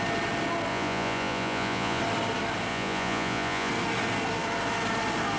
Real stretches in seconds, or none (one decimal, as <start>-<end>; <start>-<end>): 0.0-0.7; 2.0-2.7; 3.7-5.4